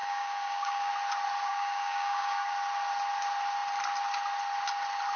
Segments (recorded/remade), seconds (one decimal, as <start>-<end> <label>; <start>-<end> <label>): 0.0-0.9 remade; 0.9-1.5 recorded; 1.5-2.5 remade; 2.5-5.2 recorded